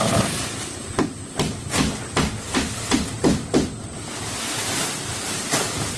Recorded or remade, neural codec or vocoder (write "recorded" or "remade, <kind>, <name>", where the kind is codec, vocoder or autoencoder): recorded